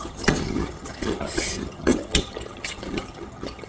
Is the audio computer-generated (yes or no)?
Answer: yes